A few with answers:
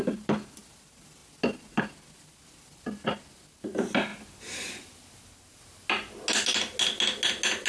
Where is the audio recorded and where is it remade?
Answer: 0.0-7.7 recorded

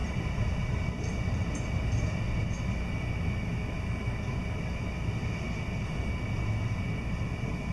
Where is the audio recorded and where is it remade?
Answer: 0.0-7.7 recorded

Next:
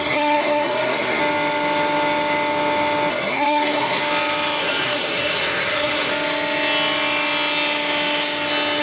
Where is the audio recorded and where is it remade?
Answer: 0.0-1.2 remade; 1.2-3.1 recorded; 3.1-4.0 remade; 4.0-4.6 recorded; 4.6-6.1 remade; 6.1-8.8 recorded

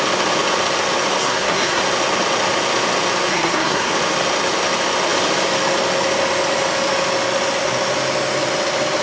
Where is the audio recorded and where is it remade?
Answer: 0.0-1.2 recorded; 1.2-1.8 remade; 1.8-3.3 recorded; 3.3-3.9 remade; 3.9-9.0 recorded